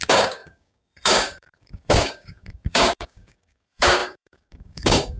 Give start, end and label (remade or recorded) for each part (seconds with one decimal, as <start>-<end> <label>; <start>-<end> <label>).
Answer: 0.0-5.2 remade